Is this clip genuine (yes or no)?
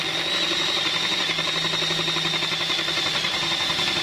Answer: yes